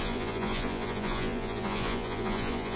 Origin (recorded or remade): remade